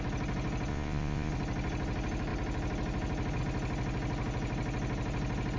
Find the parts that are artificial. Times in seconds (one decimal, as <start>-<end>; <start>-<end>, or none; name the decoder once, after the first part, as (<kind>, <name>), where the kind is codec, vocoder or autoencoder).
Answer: 0.7-1.3 (vocoder, Vocos)